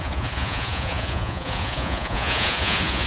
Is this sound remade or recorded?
remade